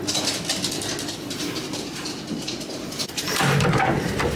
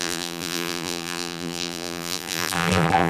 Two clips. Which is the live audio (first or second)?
first